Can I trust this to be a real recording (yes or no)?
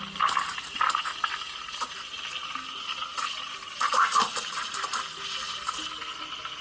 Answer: yes